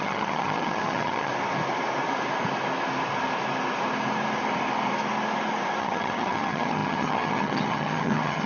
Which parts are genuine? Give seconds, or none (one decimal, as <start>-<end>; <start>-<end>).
1.3-5.8